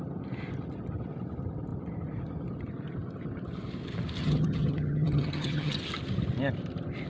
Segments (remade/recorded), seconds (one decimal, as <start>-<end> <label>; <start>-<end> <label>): 0.0-4.2 recorded; 4.2-5.8 remade; 5.8-7.1 recorded